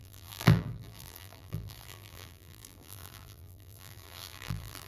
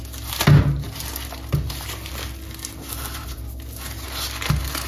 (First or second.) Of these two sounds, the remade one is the first